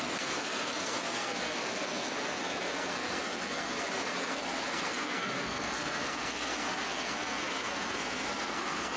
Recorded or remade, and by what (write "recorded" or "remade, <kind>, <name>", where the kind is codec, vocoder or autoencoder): remade, codec, SNAC